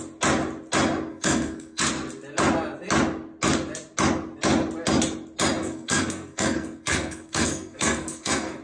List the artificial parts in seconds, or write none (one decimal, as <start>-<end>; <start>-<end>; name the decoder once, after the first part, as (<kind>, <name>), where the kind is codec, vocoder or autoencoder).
1.1-1.8 (codec, SNAC); 5.6-8.6